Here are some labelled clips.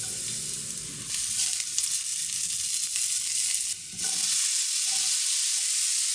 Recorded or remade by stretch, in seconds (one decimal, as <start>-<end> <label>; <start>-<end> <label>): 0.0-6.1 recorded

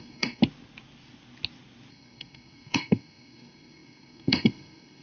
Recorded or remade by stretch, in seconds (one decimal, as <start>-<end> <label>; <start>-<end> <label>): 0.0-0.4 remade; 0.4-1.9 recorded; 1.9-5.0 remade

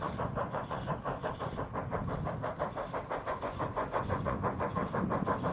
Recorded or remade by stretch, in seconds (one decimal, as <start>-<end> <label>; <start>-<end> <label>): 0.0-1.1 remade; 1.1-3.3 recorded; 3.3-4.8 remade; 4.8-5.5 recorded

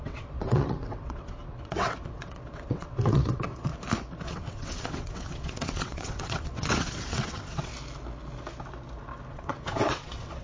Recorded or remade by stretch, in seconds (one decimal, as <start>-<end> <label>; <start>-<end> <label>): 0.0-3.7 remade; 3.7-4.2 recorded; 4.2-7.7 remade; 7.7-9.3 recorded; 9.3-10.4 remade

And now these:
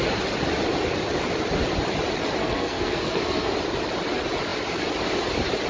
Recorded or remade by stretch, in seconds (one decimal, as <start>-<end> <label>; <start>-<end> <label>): 0.0-2.4 recorded; 2.4-3.5 remade; 3.5-5.7 recorded